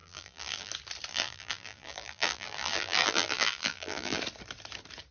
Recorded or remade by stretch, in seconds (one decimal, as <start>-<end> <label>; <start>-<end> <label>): 0.0-0.7 remade; 0.7-1.1 recorded; 1.1-4.2 remade; 4.2-5.1 recorded